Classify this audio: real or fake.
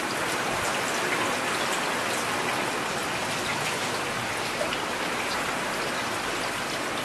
real